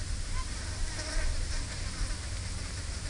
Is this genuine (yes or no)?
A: yes